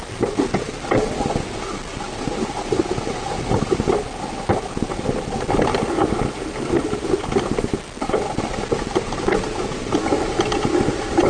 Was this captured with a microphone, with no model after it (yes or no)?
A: yes